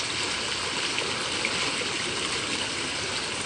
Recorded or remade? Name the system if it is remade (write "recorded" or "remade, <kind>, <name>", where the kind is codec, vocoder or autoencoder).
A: recorded